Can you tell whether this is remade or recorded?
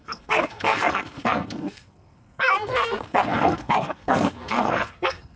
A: remade